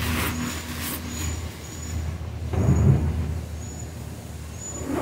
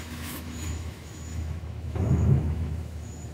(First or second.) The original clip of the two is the first